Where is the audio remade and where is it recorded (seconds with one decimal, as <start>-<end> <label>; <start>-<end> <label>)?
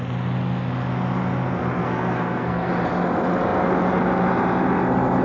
0.0-1.8 recorded; 1.8-2.7 remade; 2.7-5.2 recorded